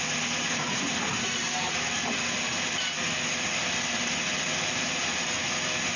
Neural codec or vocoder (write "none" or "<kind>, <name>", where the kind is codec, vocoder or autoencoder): none